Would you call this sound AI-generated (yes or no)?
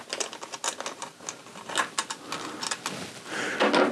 no